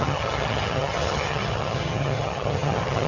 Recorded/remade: remade